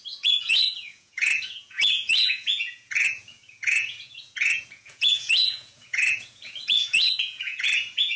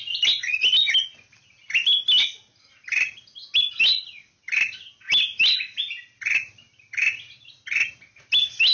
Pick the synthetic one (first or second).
first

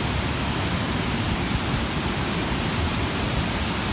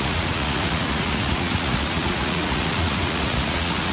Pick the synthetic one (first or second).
second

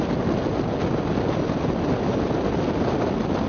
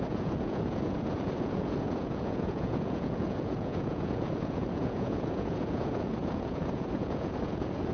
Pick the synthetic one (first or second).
second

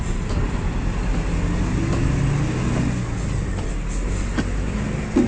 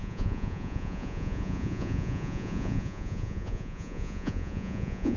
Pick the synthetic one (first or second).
second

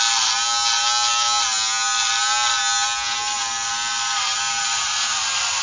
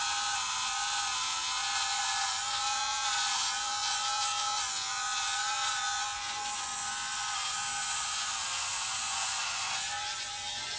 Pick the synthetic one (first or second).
second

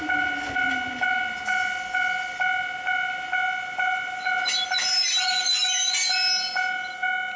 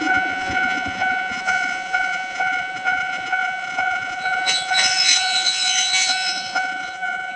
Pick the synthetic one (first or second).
second